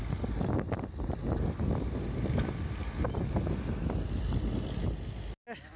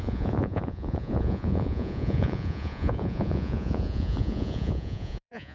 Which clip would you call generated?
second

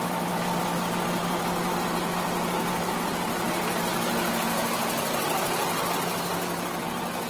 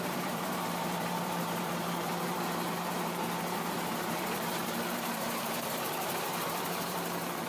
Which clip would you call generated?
second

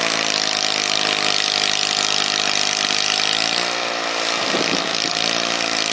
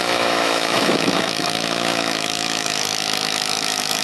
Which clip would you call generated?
second